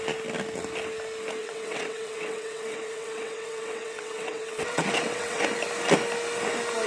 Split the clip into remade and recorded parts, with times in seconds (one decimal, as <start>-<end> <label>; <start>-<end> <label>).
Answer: 0.0-1.4 recorded; 1.4-5.4 remade; 5.4-6.9 recorded